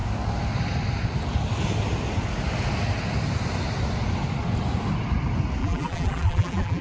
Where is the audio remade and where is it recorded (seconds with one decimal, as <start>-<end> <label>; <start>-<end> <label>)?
0.0-5.6 recorded; 5.6-6.8 remade